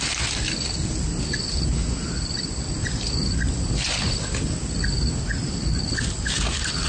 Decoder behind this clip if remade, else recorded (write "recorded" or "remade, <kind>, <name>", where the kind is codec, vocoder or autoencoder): recorded